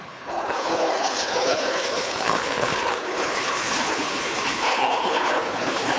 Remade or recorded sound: remade